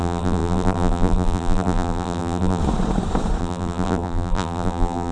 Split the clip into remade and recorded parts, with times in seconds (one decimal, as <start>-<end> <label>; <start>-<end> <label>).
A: 0.0-2.6 remade; 2.6-3.4 recorded; 3.4-5.1 remade